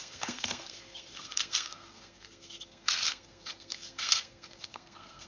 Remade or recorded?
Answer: remade